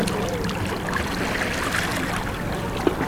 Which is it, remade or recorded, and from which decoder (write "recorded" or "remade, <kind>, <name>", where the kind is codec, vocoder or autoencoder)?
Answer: recorded